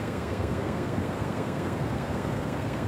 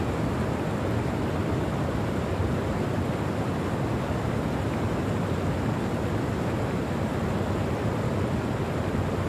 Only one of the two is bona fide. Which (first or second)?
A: second